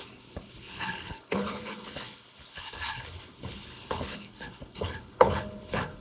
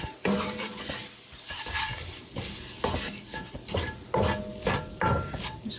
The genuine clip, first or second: second